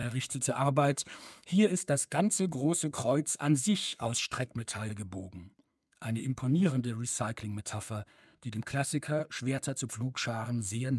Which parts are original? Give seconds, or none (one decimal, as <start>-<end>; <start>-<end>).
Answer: 4.9-5.7; 7.1-7.6; 9.2-9.9